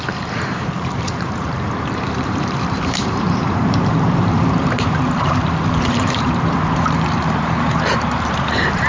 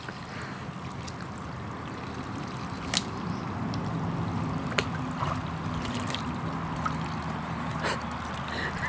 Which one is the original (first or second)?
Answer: second